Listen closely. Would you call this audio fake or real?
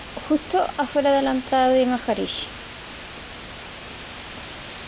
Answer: real